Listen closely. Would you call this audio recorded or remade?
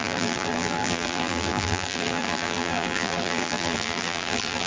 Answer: remade